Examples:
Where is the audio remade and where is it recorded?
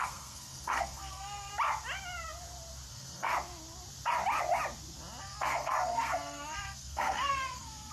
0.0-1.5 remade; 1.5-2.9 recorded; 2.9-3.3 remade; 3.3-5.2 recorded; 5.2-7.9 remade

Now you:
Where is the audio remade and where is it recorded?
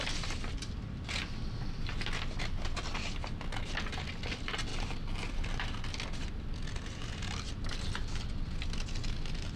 0.0-4.7 recorded; 4.7-5.8 remade; 5.8-9.6 recorded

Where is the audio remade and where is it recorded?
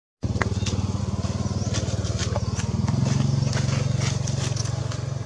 0.0-5.3 recorded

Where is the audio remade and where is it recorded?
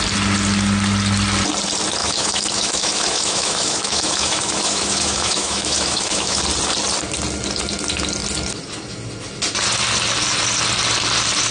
0.0-2.0 recorded; 2.0-6.4 remade; 6.4-11.5 recorded